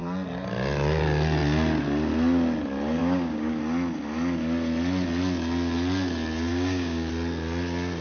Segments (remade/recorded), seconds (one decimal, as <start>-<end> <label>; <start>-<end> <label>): 0.0-3.0 recorded; 3.0-3.6 remade; 3.6-6.5 recorded; 6.5-7.1 remade; 7.1-8.0 recorded